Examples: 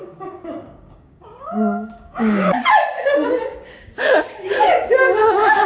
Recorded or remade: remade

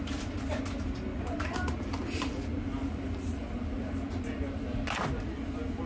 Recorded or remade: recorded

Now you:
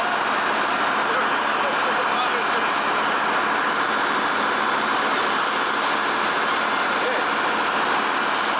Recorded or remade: recorded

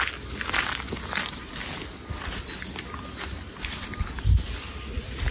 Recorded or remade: recorded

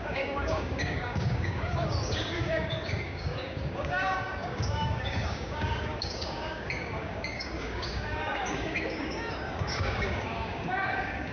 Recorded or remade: remade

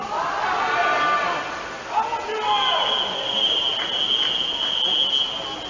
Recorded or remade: recorded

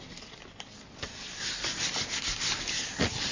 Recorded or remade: recorded